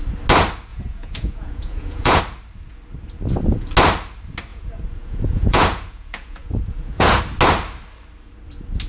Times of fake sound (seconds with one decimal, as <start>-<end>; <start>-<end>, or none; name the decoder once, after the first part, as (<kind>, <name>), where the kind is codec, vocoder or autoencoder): 0.7-2.2 (vocoder, Vocos); 4.5-7.2